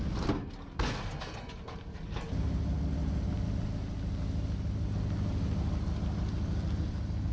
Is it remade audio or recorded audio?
recorded